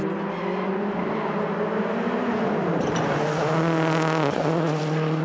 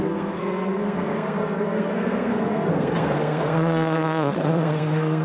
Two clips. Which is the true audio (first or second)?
first